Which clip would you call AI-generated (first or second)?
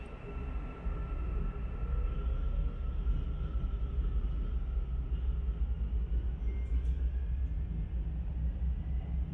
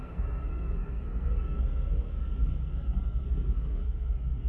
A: second